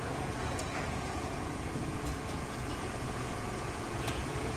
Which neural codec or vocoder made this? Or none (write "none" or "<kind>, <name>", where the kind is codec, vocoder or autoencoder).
vocoder, Vocos